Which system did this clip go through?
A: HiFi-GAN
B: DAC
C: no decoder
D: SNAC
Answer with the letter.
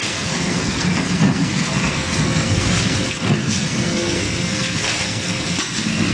D